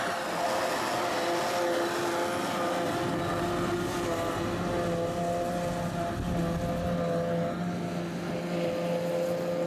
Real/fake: real